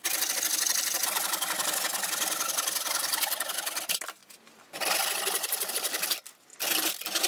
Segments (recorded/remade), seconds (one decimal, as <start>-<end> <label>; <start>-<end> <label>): 0.0-7.3 recorded